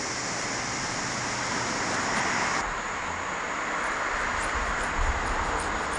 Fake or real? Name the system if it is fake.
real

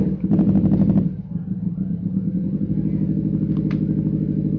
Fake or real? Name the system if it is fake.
real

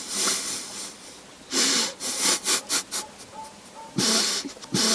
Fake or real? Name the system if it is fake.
real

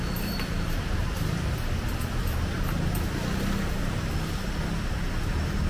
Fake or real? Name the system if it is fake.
real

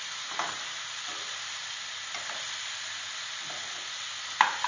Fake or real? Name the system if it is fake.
real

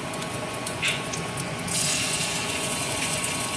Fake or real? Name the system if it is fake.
fake, vocoder, Vocos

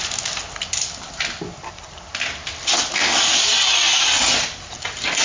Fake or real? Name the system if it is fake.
real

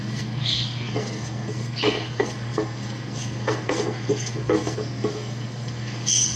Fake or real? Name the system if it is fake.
fake, codec, SNAC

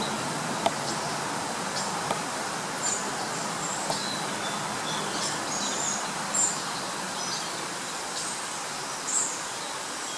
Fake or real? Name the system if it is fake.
real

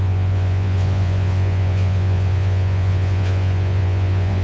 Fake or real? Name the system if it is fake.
fake, vocoder, Vocos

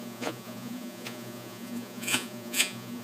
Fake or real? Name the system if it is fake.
fake, vocoder, Vocos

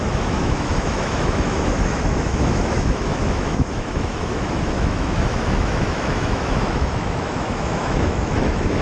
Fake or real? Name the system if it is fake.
fake, autoencoder, DAC-VAE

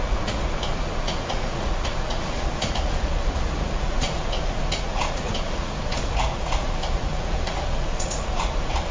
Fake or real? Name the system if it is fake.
fake, vocoder, Vocos